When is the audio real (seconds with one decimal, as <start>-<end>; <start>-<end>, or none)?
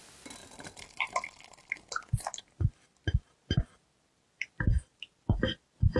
0.0-6.0